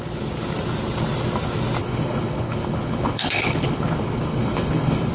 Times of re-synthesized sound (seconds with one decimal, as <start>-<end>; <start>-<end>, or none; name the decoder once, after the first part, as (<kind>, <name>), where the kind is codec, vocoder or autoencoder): 1.8-5.1 (codec, HILCodec)